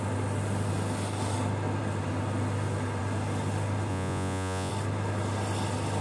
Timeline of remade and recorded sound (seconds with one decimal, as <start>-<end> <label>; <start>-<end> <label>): 0.0-3.9 recorded; 3.9-4.7 remade; 4.7-6.0 recorded